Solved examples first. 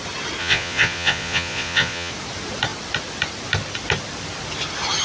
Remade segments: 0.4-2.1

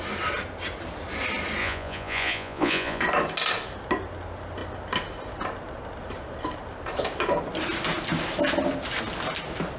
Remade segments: 1.6-3.0

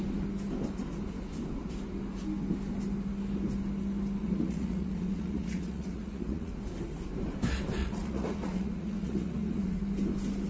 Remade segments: 4.2-6.5; 7.8-9.8